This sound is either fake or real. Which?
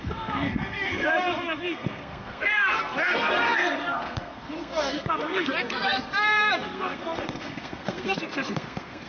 fake